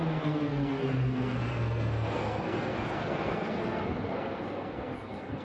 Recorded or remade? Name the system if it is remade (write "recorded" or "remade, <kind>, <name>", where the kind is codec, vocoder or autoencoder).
remade, codec, SNAC